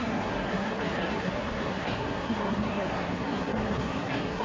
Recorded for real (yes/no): no